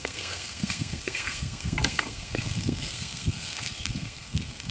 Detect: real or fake fake